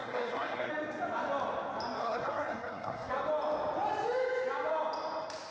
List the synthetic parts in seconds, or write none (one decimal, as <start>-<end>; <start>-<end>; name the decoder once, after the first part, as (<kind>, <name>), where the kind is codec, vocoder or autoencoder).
0.0-0.7 (codec, SNAC); 2.0-3.1